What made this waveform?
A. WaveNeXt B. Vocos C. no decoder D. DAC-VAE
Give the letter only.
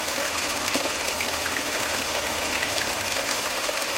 D